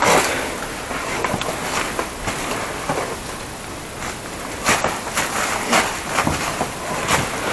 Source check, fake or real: real